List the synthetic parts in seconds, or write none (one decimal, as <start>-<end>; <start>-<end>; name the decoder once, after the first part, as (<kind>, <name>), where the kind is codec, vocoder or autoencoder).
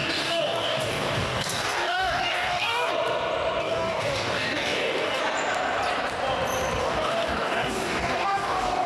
0.0-2.9 (codec, DAC); 3.6-5.2; 6.8-8.9